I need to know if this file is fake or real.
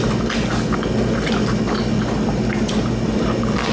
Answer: real